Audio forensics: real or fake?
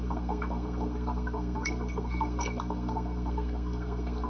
fake